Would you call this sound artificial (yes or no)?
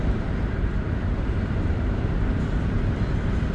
yes